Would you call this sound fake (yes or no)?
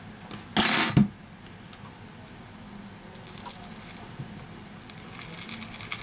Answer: no